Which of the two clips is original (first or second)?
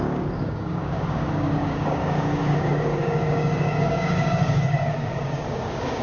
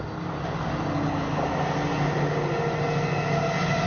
second